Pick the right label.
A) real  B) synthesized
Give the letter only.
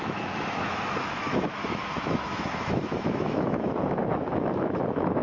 B